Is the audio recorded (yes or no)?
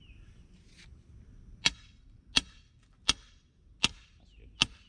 yes